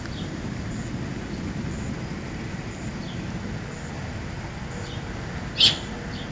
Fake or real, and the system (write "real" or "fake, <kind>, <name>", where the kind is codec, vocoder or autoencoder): real